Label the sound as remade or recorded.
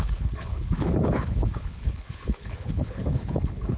remade